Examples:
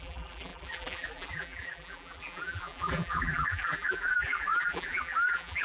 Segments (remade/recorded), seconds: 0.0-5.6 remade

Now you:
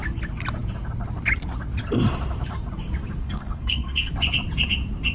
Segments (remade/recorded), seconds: 0.0-3.2 recorded; 3.2-4.1 remade; 4.1-5.1 recorded

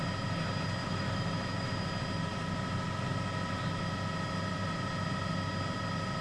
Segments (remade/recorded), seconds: 0.0-0.8 recorded; 0.8-1.7 remade; 1.7-6.2 recorded

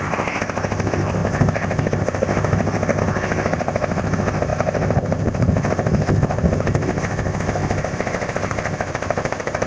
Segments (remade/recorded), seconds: 0.0-9.7 remade

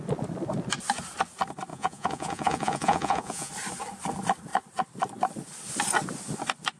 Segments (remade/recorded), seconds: 0.0-1.7 recorded; 1.7-3.5 remade; 3.5-6.8 recorded

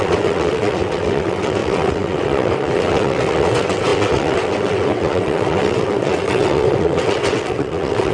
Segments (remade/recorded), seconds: 0.0-8.1 remade